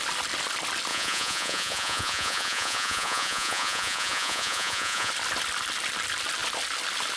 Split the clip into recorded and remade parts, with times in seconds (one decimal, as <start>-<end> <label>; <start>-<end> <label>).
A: 0.0-0.9 recorded; 0.9-5.1 remade; 5.1-7.2 recorded